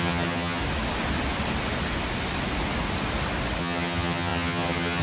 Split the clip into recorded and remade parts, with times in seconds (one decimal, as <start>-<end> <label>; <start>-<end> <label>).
0.0-0.6 remade; 0.6-3.6 recorded; 3.6-5.0 remade